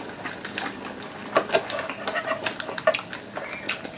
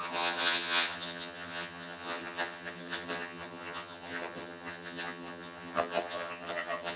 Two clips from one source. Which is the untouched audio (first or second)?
first